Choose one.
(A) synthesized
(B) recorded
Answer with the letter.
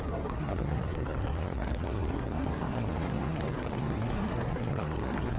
A